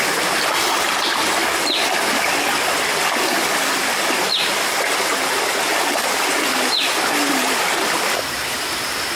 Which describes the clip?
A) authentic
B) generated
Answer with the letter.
A